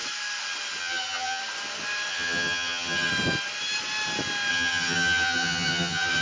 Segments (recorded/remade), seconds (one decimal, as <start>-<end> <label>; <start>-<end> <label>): 0.0-0.8 recorded; 0.8-1.4 remade; 1.4-2.1 recorded; 2.1-3.1 remade; 3.1-4.5 recorded; 4.5-6.2 remade